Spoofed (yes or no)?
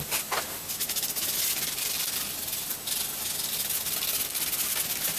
no